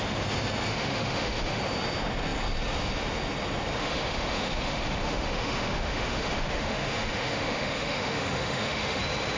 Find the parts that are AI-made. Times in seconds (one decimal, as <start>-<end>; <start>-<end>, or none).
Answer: 0.7-1.6; 3.8-9.0